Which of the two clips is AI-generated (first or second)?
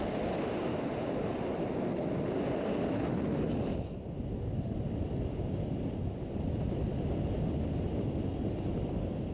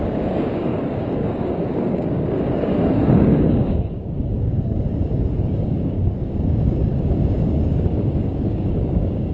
second